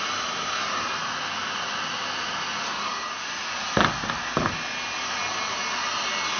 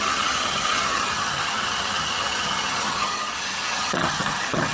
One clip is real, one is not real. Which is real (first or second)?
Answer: first